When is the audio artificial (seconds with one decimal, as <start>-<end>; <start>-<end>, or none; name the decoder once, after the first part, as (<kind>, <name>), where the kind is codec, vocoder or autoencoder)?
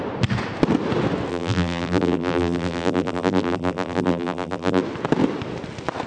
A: 1.3-4.8 (vocoder, BigVGAN v2)